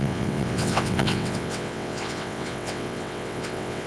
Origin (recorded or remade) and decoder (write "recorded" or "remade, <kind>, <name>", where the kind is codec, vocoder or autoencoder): remade, vocoder, WaveNeXt